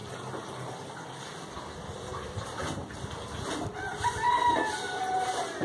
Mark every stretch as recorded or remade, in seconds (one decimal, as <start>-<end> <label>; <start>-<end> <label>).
0.0-5.6 recorded